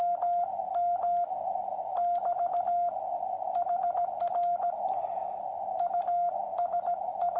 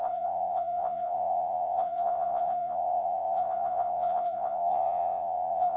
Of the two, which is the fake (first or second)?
second